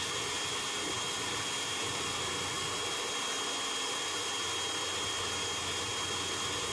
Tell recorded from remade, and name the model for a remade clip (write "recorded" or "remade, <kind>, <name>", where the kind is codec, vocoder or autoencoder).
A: recorded